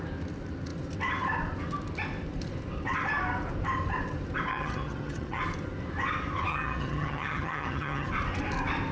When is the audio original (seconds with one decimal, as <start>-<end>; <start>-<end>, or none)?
0.0-4.5; 5.4-6.5; 8.1-8.9